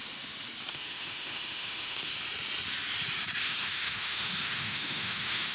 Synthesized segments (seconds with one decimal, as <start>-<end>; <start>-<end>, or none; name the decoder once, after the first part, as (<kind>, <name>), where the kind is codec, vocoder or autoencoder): 0.7-2.1 (autoencoder, DAC-VAE); 3.4-5.5